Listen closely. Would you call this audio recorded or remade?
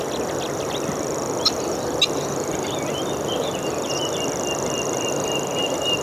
recorded